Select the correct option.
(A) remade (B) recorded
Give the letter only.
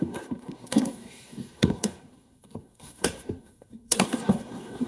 A